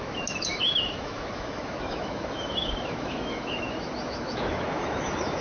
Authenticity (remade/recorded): remade